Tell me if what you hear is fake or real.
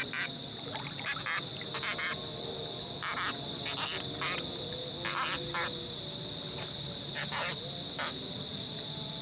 real